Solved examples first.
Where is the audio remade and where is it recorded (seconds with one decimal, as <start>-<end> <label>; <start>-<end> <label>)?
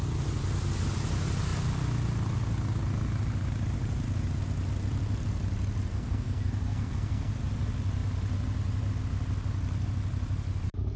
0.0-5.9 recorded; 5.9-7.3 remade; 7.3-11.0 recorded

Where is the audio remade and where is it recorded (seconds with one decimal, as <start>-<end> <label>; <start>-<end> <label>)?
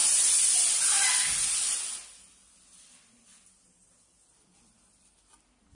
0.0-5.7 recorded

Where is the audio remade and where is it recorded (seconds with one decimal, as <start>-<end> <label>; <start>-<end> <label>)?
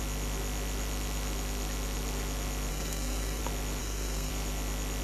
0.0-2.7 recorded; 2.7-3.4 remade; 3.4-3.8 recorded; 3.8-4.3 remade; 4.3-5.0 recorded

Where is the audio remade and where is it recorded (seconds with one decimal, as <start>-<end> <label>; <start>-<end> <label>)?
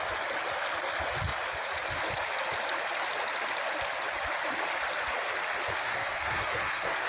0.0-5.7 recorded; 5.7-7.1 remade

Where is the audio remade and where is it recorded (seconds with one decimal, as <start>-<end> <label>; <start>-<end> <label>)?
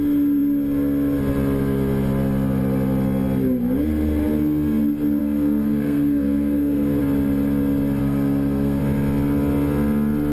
0.0-5.2 recorded; 5.2-7.0 remade; 7.0-8.0 recorded; 8.0-8.8 remade; 8.8-10.3 recorded